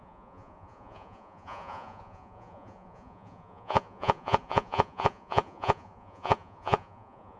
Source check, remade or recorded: remade